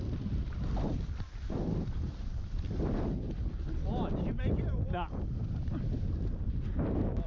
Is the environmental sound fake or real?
real